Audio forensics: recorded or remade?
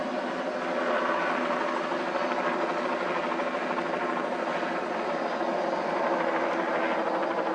recorded